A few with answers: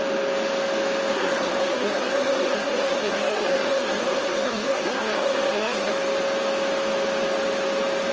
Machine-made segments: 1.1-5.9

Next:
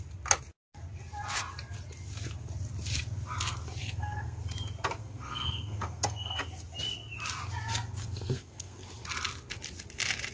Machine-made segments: 3.8-4.4; 5.0-6.4; 8.0-8.8

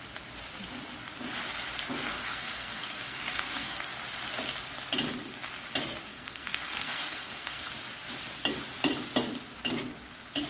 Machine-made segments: 2.1-3.9; 6.1-7.7

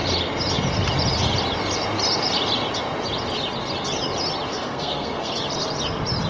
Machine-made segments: 4.5-5.3

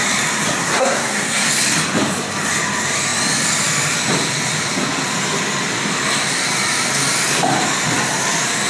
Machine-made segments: 0.6-1.5

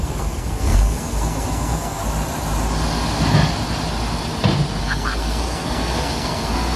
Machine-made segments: 0.0-2.0; 4.8-6.8

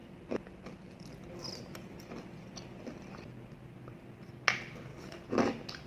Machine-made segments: none

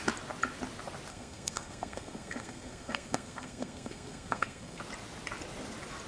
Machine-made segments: 1.1-4.8